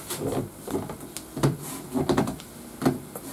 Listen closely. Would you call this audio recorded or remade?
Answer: recorded